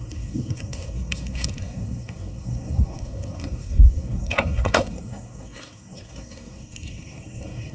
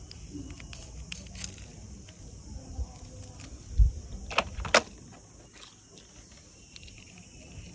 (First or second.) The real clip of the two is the second